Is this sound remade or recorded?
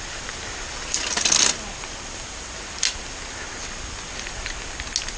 recorded